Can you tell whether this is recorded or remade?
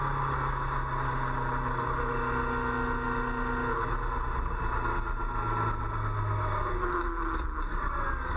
recorded